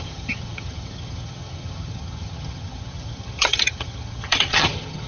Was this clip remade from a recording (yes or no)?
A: yes